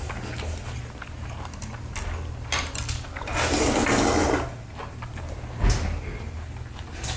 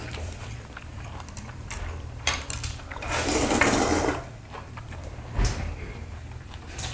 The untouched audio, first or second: first